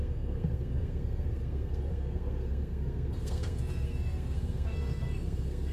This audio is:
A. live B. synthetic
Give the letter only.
B